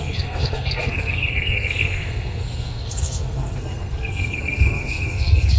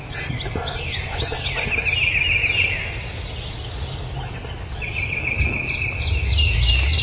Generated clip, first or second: first